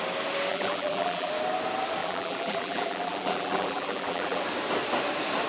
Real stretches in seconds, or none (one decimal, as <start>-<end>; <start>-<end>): 0.0-0.5; 1.3-2.0; 4.4-5.5